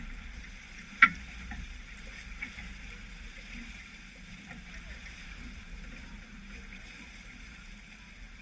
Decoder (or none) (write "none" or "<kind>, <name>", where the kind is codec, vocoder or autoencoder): vocoder, BigVGAN v2